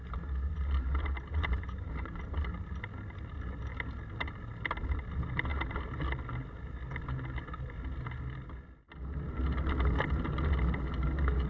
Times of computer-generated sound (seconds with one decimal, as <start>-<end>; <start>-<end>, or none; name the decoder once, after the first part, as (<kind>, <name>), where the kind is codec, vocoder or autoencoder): none